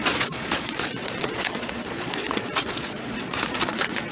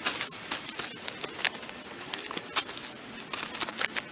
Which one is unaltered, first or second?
second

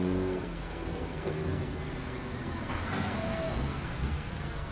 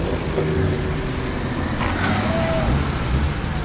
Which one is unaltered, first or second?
second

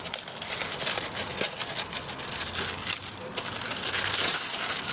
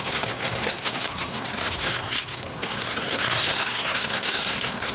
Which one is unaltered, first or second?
first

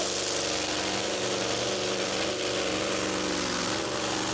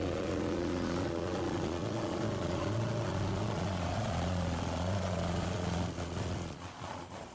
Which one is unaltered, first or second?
first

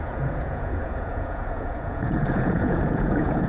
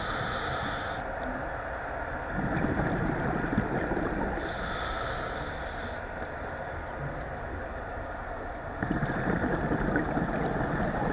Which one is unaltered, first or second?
second